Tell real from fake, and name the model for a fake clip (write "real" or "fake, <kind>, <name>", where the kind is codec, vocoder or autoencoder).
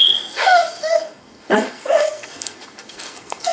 fake, codec, SNAC